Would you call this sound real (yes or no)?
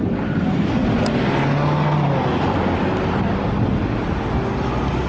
yes